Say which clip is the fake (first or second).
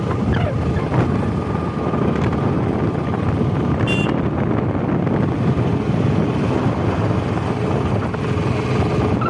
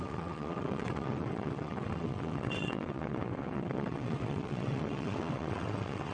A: second